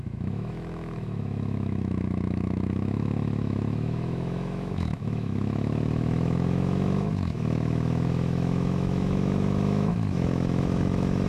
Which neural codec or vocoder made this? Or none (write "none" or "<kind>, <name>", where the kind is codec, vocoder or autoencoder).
autoencoder, DAC-VAE